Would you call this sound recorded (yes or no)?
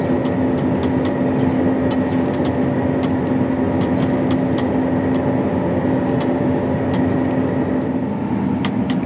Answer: yes